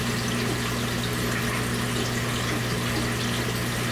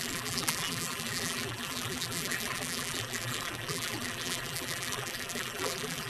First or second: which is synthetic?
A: second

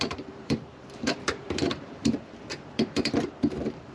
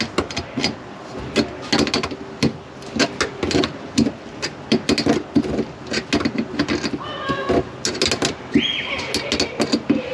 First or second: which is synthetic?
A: first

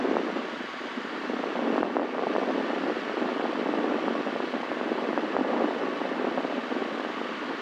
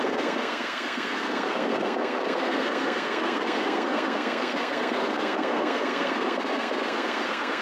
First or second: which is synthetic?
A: second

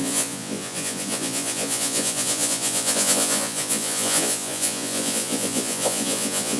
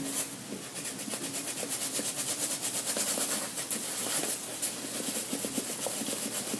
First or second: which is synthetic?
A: first